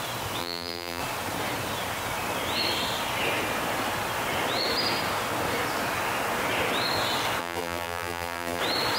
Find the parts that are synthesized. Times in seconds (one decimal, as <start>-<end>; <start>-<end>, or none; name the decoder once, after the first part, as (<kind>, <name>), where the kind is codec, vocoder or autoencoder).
0.4-1.0 (vocoder, BigVGAN v2); 7.4-8.6

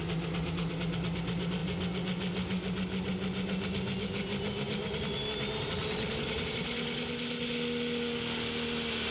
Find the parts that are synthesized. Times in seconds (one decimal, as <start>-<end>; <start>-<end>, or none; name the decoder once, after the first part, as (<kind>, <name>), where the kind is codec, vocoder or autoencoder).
none

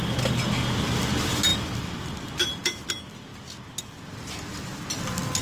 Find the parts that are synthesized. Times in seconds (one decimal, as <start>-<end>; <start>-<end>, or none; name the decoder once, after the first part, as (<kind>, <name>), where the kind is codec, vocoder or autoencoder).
none

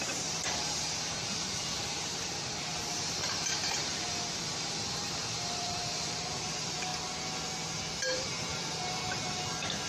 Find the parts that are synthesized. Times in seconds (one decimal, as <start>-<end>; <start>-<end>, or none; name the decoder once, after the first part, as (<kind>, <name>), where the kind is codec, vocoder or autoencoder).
0.0-6.9 (vocoder, BigVGAN v2); 8.0-9.9